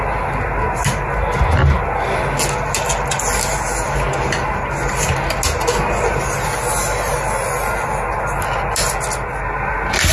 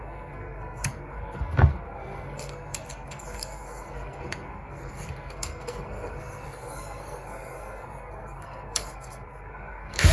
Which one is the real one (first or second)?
first